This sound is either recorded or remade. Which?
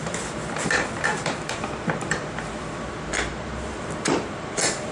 remade